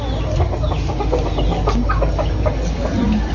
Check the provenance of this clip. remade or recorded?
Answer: recorded